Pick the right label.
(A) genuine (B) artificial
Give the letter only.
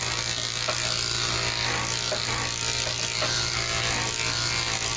A